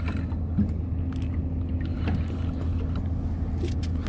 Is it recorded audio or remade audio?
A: recorded